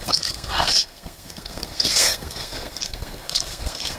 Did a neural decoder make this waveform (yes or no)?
yes